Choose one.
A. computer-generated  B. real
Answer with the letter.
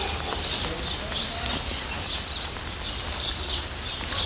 B